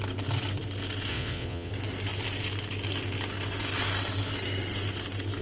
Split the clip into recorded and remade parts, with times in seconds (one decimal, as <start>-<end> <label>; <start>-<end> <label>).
0.0-1.1 recorded; 1.1-1.7 remade; 1.7-5.4 recorded

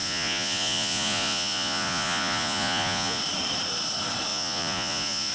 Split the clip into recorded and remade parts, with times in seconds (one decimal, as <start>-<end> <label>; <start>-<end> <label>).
0.0-3.2 remade; 3.2-4.3 recorded; 4.3-5.3 remade

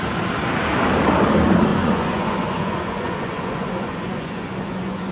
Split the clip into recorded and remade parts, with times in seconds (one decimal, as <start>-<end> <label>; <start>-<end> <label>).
0.0-1.7 recorded; 1.7-5.1 remade